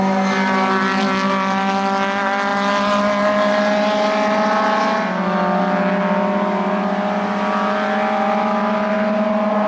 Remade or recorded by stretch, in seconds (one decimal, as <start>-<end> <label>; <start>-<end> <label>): 0.0-9.7 recorded